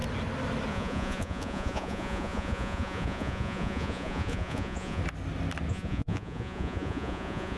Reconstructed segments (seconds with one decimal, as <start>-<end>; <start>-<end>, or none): 0.7-5.0; 5.7-7.6